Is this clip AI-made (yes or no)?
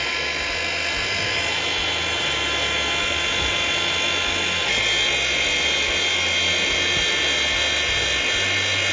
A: no